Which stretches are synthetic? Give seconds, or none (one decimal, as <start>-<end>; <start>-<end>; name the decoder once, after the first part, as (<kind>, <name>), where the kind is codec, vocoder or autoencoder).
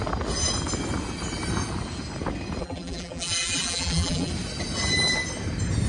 2.6-4.3 (vocoder, BigVGAN v2)